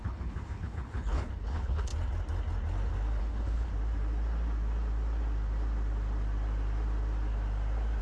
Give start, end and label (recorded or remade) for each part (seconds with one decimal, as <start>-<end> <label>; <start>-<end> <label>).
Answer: 0.0-1.9 remade; 1.9-3.2 recorded; 3.2-3.7 remade; 3.7-8.0 recorded